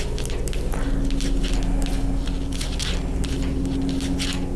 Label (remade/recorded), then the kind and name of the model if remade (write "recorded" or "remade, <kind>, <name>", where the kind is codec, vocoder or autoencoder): recorded